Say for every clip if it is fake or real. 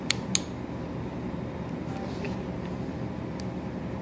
real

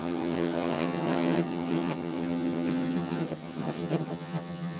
fake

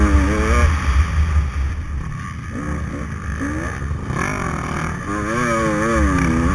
real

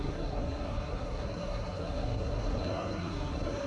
fake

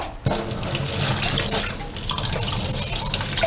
real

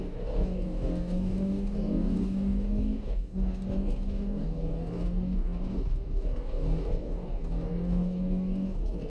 fake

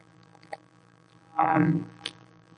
fake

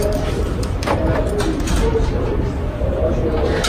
real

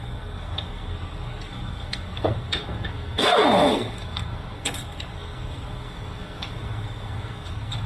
fake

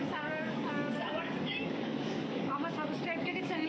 fake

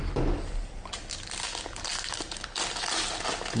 real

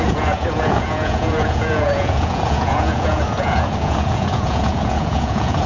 fake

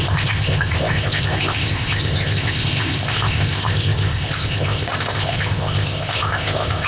fake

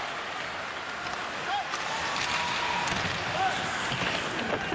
real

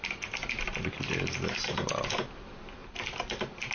real